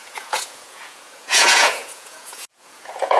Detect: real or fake fake